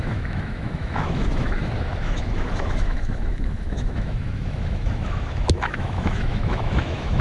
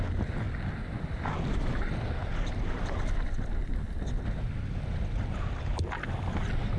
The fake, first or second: first